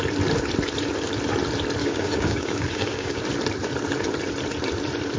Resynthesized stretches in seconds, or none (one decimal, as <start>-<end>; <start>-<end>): 1.8-3.2